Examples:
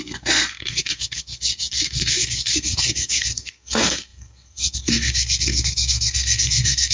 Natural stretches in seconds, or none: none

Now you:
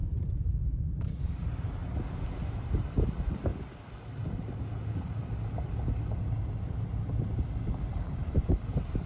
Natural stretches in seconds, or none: 1.8-2.5; 3.5-7.8

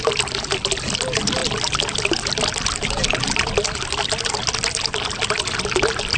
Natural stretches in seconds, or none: 0.0-6.2

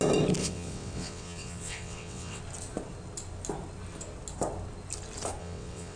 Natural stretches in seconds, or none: 0.0-0.4; 2.4-5.4

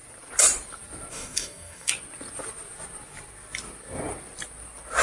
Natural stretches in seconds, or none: 0.0-1.1; 1.9-5.0

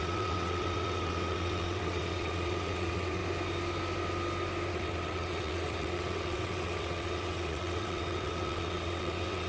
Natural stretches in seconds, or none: 3.2-4.7